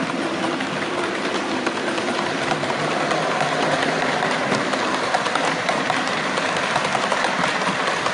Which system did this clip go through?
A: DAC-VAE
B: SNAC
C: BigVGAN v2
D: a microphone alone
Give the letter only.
C